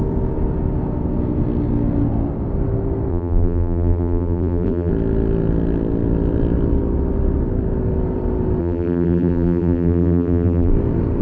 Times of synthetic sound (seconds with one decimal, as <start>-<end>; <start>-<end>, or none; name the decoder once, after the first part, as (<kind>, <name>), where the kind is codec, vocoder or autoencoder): 3.1-4.9 (vocoder, BigVGAN v2); 8.6-10.7